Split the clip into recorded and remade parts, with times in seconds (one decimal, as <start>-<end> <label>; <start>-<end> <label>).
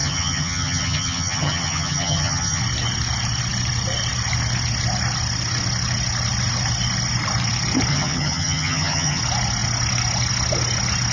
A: 0.0-2.6 remade; 2.6-7.9 recorded; 7.9-9.2 remade; 9.2-11.1 recorded